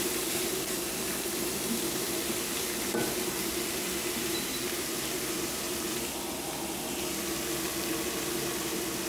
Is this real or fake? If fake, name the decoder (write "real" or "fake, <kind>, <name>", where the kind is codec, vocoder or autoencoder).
fake, vocoder, BigVGAN v2